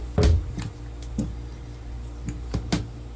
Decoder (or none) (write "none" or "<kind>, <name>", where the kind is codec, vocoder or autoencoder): none